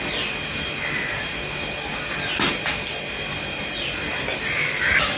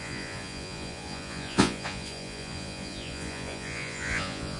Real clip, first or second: first